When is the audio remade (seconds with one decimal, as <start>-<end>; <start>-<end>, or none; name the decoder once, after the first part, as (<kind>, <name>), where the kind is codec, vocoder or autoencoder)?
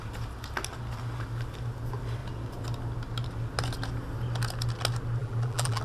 5.2-5.8 (vocoder, BigVGAN v2)